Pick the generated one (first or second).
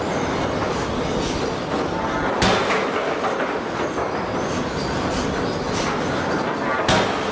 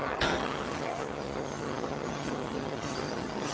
second